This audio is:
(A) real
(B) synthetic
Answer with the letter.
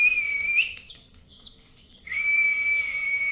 B